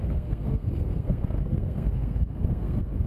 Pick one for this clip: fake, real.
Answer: fake